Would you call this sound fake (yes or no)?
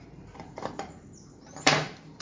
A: yes